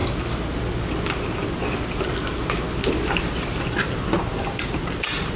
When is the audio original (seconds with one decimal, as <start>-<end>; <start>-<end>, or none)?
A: 0.0-3.2